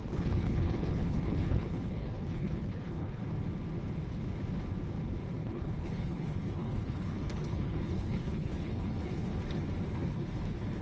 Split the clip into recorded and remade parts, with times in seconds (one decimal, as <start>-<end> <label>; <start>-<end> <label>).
0.0-3.2 remade; 3.2-5.4 recorded; 5.4-9.3 remade; 9.3-10.1 recorded; 10.1-10.8 remade